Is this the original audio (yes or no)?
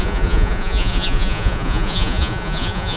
no